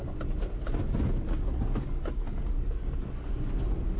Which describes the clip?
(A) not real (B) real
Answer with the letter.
B